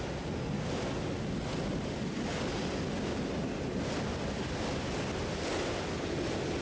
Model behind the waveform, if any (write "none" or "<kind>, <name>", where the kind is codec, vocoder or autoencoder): none